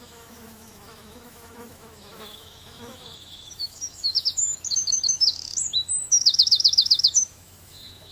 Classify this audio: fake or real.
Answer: fake